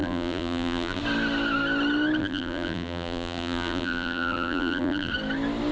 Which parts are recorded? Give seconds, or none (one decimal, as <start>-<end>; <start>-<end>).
1.0-2.2; 5.1-5.7